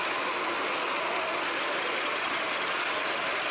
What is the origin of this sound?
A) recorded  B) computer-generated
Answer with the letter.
A